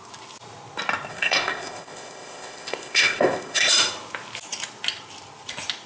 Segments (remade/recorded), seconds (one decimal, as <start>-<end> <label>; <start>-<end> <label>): 0.0-1.1 recorded; 1.1-3.7 remade; 3.7-5.9 recorded